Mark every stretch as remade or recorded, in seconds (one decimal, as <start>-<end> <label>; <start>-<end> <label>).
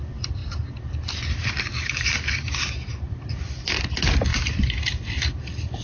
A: 0.0-0.4 remade; 0.4-3.3 recorded; 3.3-5.8 remade